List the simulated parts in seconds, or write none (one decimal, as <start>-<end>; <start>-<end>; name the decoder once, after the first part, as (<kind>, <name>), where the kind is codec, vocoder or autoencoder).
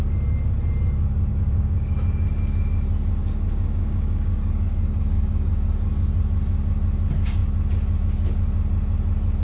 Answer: 1.3-1.9 (codec, DAC); 3.2-6.2